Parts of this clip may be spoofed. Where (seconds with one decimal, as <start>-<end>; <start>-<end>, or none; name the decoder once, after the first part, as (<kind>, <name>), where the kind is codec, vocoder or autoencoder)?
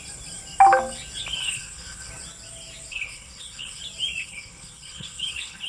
1.4-2.1 (codec, HILCodec); 2.9-3.8; 4.2-5.7